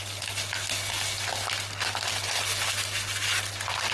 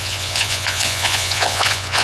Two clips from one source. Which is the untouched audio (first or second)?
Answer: first